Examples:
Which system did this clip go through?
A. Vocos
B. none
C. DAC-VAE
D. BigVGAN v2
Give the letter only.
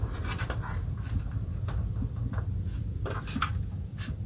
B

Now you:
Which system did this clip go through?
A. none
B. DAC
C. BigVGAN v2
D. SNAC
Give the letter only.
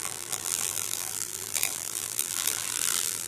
C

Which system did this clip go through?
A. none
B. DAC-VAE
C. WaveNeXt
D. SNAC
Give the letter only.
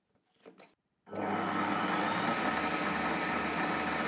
A